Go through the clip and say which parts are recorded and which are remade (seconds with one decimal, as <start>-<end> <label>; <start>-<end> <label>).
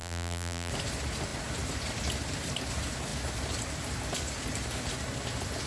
0.0-0.7 remade; 0.7-5.7 recorded